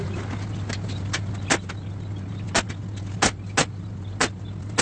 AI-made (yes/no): no